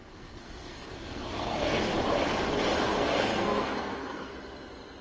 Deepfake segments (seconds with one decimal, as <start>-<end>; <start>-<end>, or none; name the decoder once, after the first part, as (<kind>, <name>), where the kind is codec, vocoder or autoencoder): 0.0-1.9 (codec, SNAC); 2.8-4.3